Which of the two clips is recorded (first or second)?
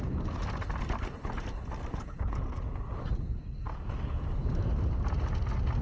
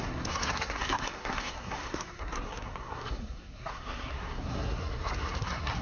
first